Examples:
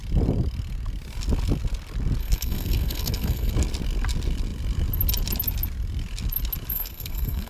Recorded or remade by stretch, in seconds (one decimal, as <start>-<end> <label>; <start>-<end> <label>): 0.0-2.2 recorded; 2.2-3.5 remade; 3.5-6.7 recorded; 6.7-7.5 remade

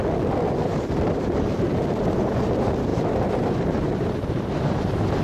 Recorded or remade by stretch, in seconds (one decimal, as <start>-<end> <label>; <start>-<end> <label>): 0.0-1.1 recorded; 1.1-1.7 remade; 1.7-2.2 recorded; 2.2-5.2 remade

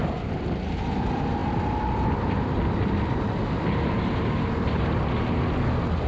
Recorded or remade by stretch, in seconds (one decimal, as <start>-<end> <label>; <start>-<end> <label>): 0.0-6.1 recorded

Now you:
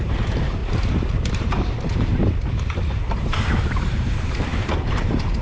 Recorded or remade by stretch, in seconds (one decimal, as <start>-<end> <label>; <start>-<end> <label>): 0.0-2.1 remade; 2.1-2.9 recorded; 2.9-5.4 remade

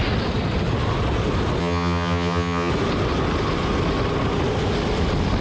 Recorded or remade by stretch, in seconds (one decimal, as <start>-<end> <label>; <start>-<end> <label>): 0.0-1.6 recorded; 1.6-2.7 remade; 2.7-5.4 recorded

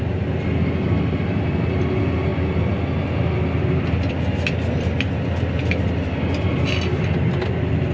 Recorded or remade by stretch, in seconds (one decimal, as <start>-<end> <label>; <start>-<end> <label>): 0.0-7.9 recorded

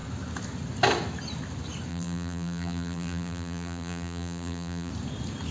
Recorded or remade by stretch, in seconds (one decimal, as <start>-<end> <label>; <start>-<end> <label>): 0.0-1.9 recorded; 1.9-4.9 remade; 4.9-5.5 recorded